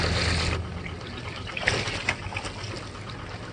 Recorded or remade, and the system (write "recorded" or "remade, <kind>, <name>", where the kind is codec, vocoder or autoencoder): recorded